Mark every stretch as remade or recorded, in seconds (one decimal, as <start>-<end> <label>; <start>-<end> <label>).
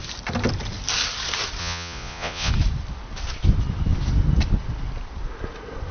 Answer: 0.0-1.6 recorded; 1.6-2.5 remade; 2.5-5.9 recorded